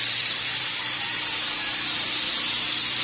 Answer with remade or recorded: remade